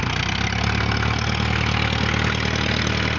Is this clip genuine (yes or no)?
yes